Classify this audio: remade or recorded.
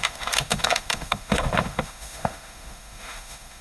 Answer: remade